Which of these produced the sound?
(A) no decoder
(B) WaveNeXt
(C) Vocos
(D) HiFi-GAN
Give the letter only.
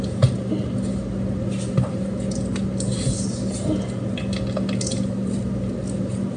A